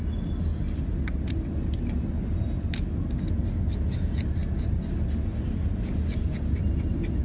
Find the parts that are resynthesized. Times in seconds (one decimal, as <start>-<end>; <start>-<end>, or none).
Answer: none